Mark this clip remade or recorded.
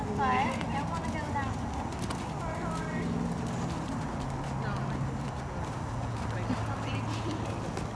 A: recorded